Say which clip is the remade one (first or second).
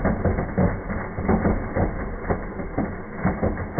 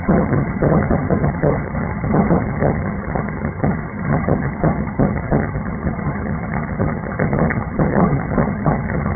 second